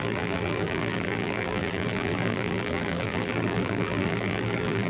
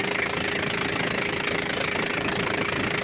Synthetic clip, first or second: first